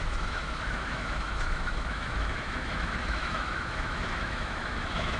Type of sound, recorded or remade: remade